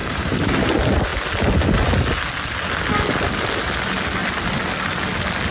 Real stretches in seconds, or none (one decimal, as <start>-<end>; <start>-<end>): 0.7-5.5